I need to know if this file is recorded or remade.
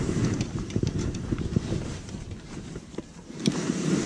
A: remade